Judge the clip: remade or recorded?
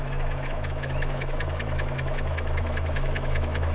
remade